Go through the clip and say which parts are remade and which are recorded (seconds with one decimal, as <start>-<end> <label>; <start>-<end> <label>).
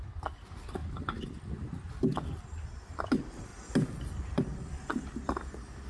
0.0-5.9 recorded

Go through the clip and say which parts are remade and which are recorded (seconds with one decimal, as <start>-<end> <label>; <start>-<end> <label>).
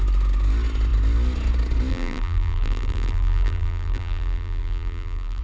0.0-1.9 recorded; 1.9-5.4 remade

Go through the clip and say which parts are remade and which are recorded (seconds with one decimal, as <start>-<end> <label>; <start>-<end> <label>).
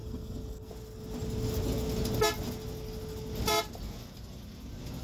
0.0-0.7 remade; 0.7-5.0 recorded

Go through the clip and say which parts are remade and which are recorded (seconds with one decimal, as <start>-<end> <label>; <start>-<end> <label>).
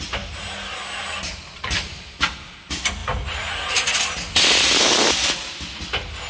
0.0-6.3 recorded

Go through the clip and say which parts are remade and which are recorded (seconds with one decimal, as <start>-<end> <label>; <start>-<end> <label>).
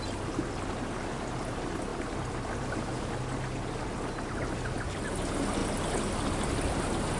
0.0-7.2 recorded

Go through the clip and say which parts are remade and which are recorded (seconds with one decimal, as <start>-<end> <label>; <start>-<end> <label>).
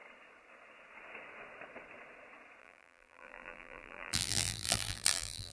0.0-2.6 recorded; 2.6-5.5 remade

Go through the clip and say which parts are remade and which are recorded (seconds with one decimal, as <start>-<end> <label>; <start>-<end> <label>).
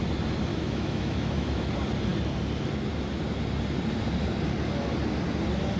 0.0-0.5 recorded; 0.5-1.7 remade; 1.7-5.8 recorded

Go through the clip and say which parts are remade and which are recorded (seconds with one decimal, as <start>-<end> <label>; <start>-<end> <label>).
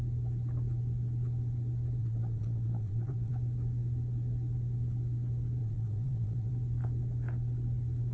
0.0-2.0 recorded; 2.0-3.3 remade; 3.3-5.6 recorded; 5.6-6.5 remade; 6.5-8.1 recorded